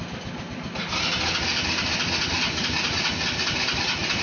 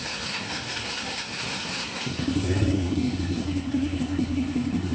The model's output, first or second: second